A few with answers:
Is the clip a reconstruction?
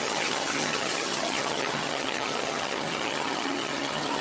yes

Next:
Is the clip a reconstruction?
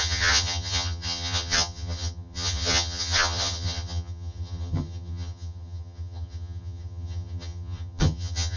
yes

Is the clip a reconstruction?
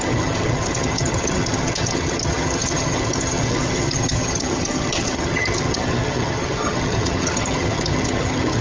yes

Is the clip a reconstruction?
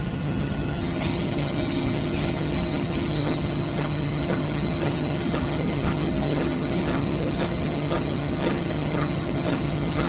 yes